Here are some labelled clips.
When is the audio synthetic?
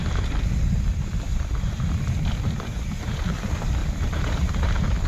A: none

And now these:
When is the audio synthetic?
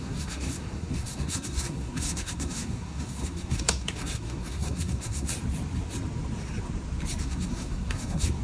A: 0.0-5.3 (codec, SNAC); 7.2-8.4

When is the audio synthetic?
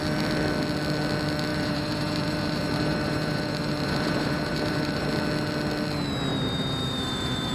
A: 1.5-5.1 (vocoder, BigVGAN v2); 6.3-7.5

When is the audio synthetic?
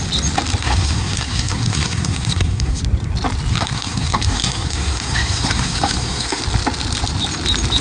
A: 0.6-2.8 (codec, SNAC); 3.5-6.4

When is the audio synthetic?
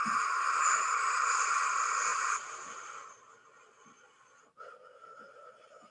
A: none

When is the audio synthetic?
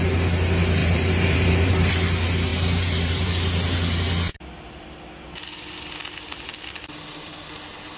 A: 0.8-1.9 (vocoder, BigVGAN v2); 2.5-3.3